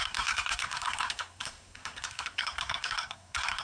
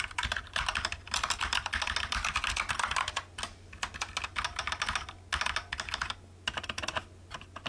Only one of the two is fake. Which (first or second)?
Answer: first